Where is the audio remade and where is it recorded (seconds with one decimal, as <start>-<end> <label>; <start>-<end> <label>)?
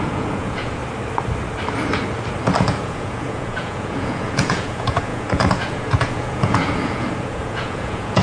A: 0.0-0.8 remade; 0.8-2.6 recorded; 2.6-8.2 remade